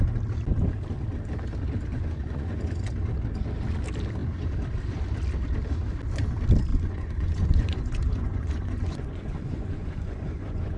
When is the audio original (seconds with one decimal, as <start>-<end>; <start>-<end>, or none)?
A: 0.0-1.9; 2.6-6.7